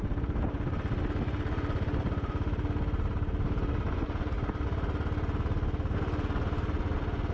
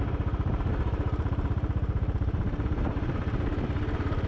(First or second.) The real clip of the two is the first